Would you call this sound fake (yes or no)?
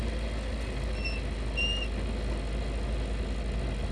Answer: no